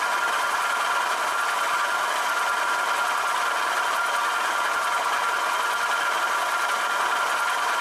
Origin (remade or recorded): recorded